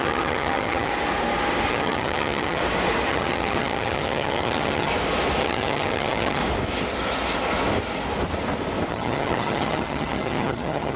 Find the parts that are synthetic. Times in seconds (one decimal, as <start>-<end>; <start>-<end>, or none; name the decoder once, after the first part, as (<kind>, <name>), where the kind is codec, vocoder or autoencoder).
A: 0.0-0.9 (vocoder, HiFi-GAN); 1.7-2.6; 3.1-4.9; 5.4-6.4; 8.9-11.0